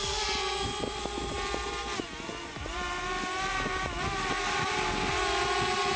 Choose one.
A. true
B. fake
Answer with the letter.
A